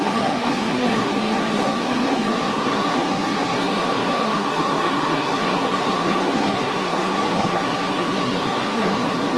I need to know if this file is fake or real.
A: fake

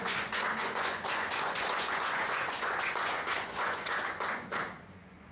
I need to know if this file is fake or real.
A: fake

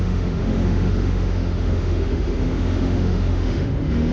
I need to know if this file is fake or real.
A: fake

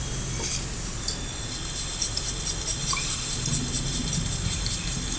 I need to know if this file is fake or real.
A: real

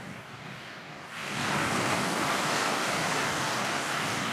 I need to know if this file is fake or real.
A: fake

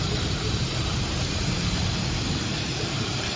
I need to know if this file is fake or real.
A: fake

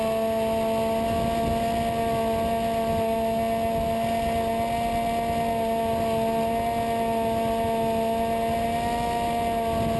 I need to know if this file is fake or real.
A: real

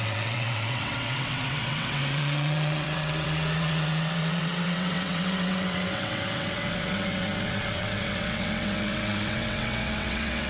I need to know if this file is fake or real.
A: fake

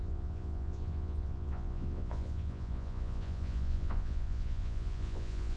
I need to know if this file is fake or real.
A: fake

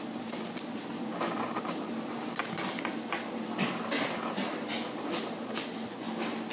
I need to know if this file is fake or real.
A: real